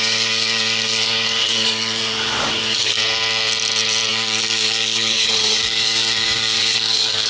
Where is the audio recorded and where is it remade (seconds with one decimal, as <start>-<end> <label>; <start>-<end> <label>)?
0.0-3.0 remade; 3.0-4.1 recorded; 4.1-7.3 remade